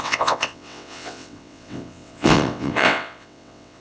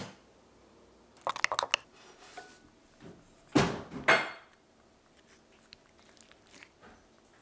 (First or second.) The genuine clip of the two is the second